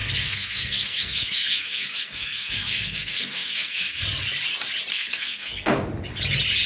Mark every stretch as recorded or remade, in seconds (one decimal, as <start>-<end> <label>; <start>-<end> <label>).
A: 0.0-4.0 remade; 4.0-4.9 recorded; 4.9-5.8 remade; 5.8-6.7 recorded